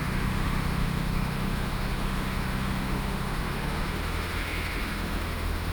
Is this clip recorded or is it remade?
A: remade